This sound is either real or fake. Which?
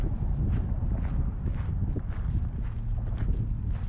real